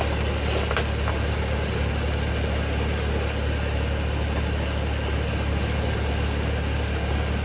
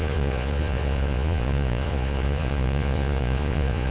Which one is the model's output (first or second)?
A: second